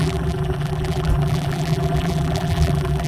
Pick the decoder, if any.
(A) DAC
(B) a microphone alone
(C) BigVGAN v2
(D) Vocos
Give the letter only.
C